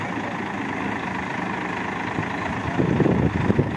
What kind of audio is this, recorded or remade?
recorded